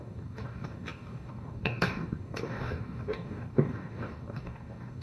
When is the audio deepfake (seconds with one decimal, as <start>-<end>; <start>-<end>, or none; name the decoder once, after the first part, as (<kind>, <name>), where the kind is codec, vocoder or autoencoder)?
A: 0.0-5.0 (codec, DAC)